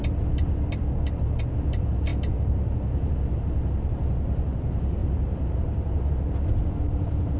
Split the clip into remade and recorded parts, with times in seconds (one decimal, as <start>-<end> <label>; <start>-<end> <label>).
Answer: 0.0-2.1 remade; 2.1-3.1 recorded; 3.1-7.4 remade